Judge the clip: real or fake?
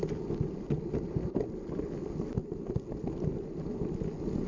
real